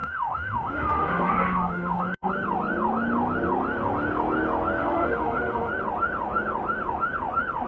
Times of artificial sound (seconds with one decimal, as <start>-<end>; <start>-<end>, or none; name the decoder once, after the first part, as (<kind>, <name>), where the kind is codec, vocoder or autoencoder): 0.0-2.3 (autoencoder, DAC-VAE); 4.8-5.7